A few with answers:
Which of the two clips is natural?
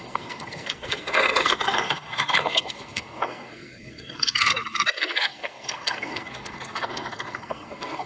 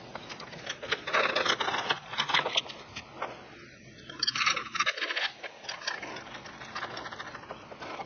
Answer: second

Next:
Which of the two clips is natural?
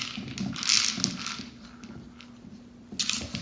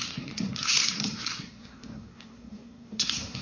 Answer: first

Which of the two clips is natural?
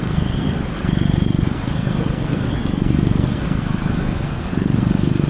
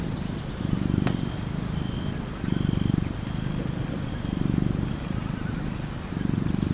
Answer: second